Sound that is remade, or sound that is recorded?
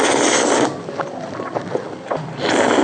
recorded